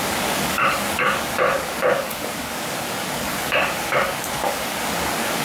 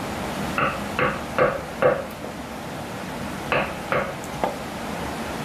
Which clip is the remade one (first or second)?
first